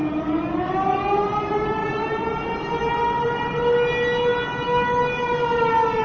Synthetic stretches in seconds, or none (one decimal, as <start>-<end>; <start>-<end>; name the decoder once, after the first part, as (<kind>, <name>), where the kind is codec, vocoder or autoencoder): 1.8-2.9 (vocoder, BigVGAN v2)